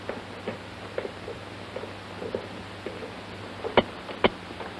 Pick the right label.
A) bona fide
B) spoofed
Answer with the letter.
A